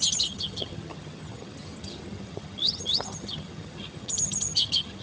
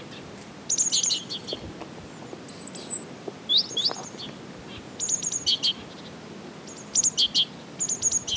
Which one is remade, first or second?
first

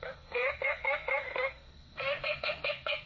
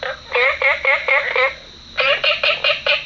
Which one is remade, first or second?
first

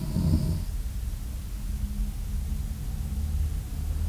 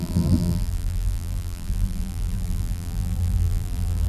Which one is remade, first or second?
second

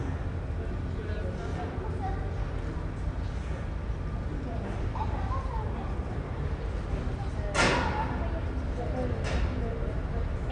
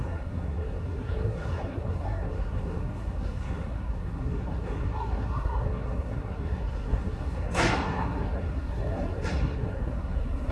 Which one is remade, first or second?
second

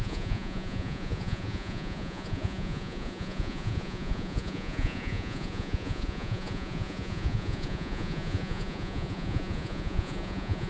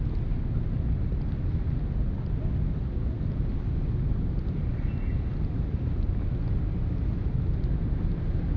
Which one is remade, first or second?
first